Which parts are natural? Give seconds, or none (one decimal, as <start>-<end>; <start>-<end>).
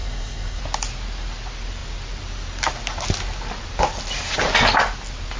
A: 0.6-5.4